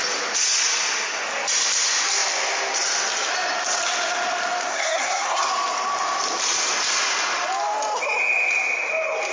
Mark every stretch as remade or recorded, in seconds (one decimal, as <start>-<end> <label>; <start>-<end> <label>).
0.0-4.7 recorded; 4.7-5.5 remade; 5.5-9.3 recorded